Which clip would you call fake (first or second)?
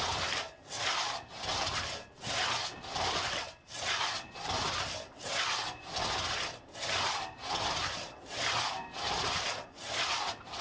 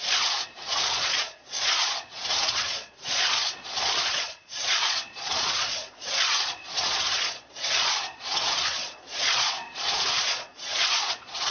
second